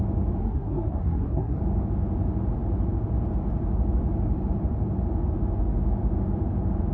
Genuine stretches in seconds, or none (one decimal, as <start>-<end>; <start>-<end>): 0.0-0.4; 1.6-6.9